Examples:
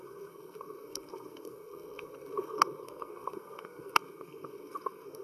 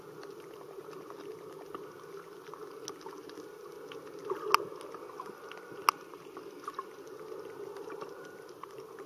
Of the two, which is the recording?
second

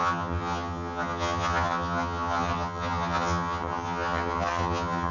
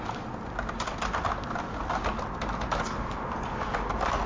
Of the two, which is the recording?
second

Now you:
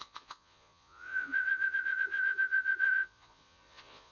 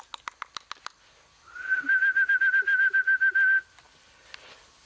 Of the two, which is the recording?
second